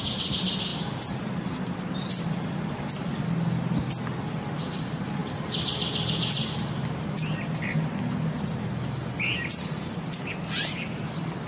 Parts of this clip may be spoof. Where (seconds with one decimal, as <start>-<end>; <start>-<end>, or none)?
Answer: none